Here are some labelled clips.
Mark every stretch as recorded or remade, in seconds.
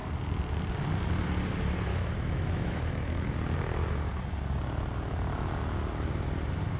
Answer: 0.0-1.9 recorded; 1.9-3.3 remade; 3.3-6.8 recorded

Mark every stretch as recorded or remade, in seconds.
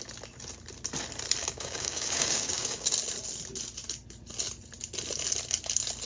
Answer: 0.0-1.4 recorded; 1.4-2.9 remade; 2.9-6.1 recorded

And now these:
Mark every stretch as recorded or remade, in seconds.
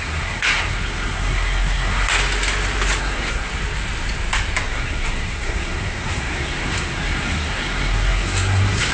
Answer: 0.0-2.1 remade; 2.1-3.0 recorded; 3.0-3.5 remade; 3.5-4.6 recorded; 4.6-8.9 remade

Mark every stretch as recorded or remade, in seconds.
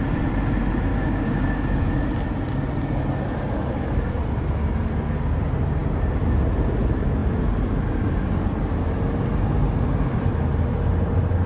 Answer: 0.0-0.9 recorded; 0.9-1.9 remade; 1.9-11.5 recorded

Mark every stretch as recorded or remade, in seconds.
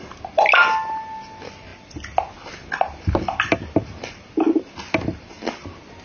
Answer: 0.0-6.0 recorded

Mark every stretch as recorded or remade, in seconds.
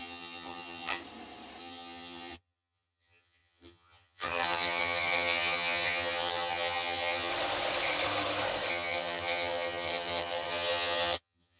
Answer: 0.0-1.0 remade; 1.0-1.6 recorded; 1.6-7.3 remade; 7.3-8.7 recorded; 8.7-11.6 remade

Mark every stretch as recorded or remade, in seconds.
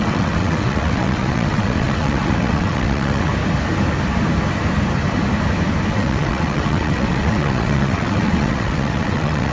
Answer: 0.0-3.3 remade; 3.3-5.9 recorded; 5.9-9.5 remade